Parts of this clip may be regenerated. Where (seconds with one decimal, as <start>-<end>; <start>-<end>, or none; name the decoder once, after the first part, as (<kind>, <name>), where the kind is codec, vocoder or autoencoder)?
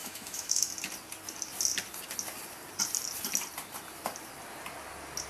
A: 0.0-0.7 (autoencoder, DAC-VAE)